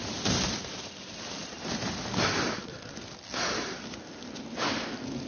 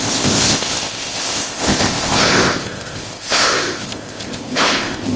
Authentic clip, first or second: first